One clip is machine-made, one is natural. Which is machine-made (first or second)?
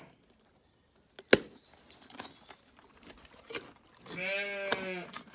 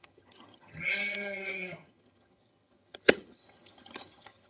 second